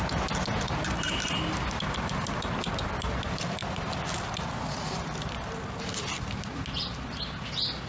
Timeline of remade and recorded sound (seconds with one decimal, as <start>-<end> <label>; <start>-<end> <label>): 0.0-7.9 recorded